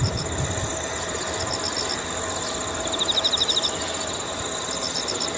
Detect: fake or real real